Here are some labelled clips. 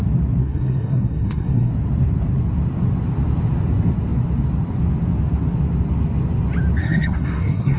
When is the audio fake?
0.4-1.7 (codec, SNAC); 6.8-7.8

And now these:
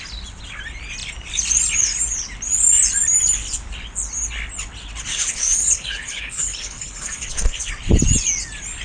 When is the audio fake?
5.1-7.7 (codec, HILCodec)

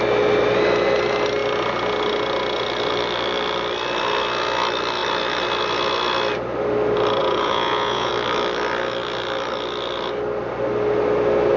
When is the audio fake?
7.2-8.1 (vocoder, Vocos)